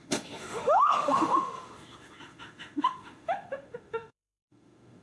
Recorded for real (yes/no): no